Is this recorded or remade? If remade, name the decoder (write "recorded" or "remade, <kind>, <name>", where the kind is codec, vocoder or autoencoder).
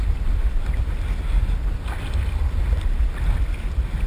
recorded